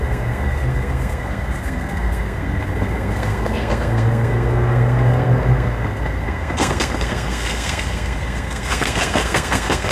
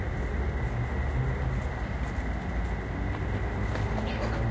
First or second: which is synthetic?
first